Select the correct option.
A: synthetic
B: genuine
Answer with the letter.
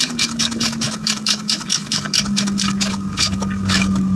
A